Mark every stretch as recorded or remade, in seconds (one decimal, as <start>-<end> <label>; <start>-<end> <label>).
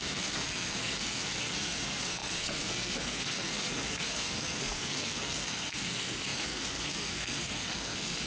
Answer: 0.0-8.3 remade